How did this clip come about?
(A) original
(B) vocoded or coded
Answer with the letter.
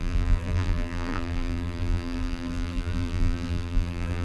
B